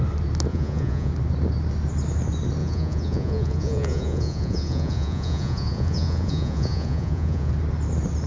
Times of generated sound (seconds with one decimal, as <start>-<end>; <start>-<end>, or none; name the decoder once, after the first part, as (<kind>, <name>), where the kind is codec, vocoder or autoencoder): 0.5-1.1 (vocoder, Vocos); 2.6-7.5